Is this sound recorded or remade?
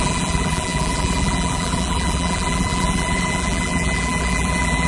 remade